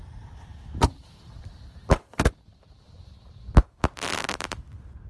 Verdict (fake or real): fake